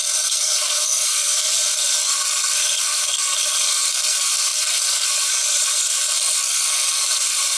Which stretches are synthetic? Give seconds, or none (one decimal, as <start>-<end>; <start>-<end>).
0.0-7.6